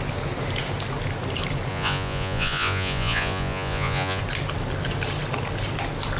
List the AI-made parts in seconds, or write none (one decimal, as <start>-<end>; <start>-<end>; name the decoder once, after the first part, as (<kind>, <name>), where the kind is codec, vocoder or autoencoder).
1.7-4.2 (vocoder, Vocos)